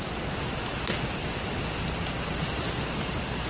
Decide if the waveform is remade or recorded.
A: recorded